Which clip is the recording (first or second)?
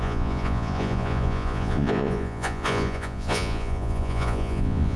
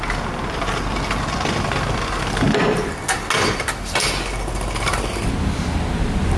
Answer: second